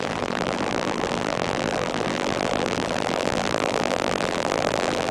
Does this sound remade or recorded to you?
remade